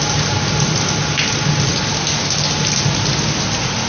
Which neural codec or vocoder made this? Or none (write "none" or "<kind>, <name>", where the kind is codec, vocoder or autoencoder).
none